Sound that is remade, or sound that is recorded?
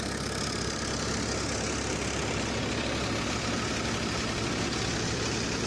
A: recorded